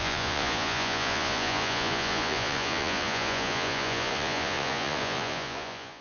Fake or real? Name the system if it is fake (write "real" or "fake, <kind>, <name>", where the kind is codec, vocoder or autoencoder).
fake, vocoder, Vocos